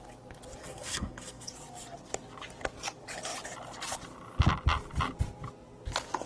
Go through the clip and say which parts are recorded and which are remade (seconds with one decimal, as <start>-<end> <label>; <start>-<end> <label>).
0.0-0.6 recorded; 0.6-1.5 remade; 1.5-6.3 recorded